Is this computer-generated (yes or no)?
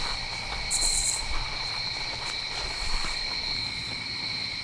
yes